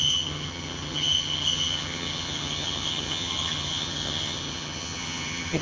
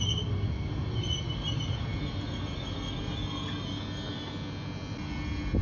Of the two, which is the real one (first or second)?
second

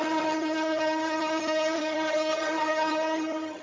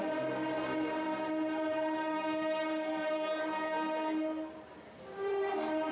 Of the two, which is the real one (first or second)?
second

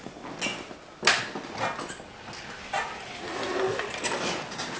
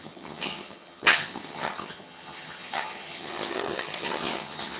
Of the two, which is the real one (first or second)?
first